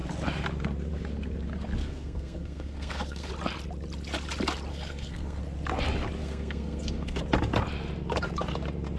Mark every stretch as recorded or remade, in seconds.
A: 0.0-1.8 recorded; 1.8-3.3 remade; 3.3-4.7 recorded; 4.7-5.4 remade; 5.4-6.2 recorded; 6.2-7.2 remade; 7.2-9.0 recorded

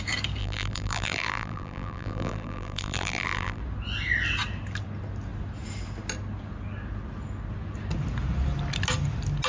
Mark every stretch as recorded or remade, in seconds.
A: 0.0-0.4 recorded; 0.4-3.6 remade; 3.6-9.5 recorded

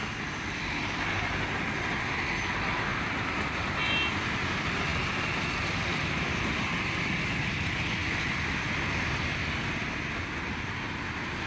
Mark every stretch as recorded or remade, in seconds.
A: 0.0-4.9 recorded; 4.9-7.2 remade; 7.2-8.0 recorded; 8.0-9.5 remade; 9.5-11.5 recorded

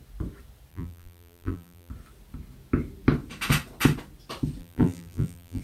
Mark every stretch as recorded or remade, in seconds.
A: 0.0-0.7 recorded; 0.7-1.9 remade; 1.9-4.6 recorded; 4.6-5.6 remade